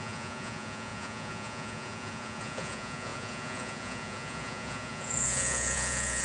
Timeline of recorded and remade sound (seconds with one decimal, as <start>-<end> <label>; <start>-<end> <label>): 0.0-6.2 remade